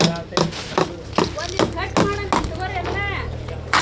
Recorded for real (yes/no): yes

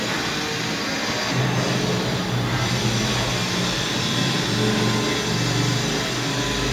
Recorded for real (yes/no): yes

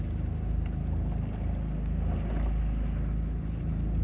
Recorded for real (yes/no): yes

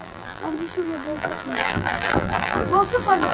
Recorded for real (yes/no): no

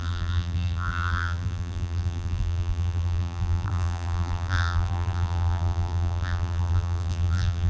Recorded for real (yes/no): no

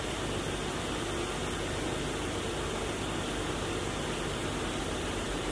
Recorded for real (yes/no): yes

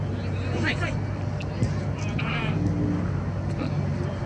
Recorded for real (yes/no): yes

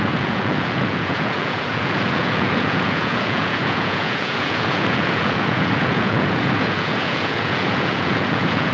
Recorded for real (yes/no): no